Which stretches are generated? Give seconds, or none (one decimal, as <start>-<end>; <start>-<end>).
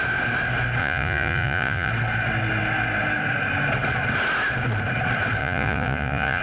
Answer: 0.8-1.9; 5.4-6.4